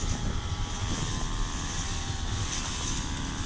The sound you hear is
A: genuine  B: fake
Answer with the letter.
A